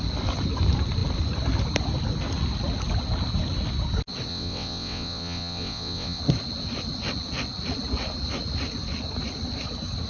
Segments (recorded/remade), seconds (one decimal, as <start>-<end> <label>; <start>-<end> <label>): 0.0-4.3 recorded; 4.3-6.2 remade; 6.2-10.1 recorded